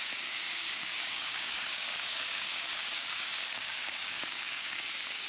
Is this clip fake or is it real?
fake